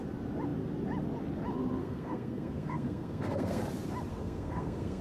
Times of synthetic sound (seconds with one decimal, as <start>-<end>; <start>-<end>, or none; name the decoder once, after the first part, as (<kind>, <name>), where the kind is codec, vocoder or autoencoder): 1.8-3.6 (codec, SNAC); 4.1-5.0